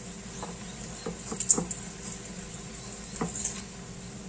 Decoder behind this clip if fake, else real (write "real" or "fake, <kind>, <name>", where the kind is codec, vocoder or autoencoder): real